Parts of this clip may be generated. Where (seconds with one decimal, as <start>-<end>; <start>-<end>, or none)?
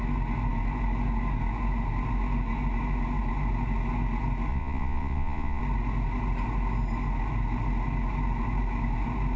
4.5-5.6